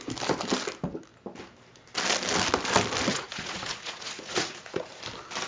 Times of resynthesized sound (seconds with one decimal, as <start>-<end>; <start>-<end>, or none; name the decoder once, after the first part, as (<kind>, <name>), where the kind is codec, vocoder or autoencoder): 3.1-5.0 (vocoder, Vocos)